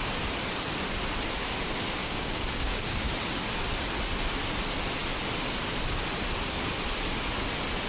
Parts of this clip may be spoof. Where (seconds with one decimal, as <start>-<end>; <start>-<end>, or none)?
2.0-3.1